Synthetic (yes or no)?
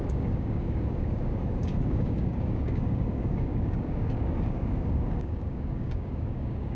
yes